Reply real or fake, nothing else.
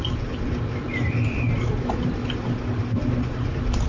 real